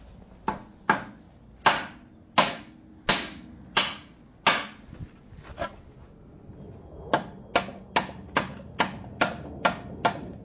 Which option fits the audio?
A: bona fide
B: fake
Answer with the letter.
A